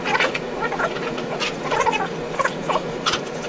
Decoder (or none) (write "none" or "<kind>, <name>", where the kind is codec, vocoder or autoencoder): vocoder, Vocos